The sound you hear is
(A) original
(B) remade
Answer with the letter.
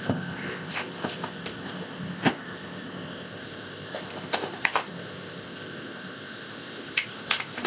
B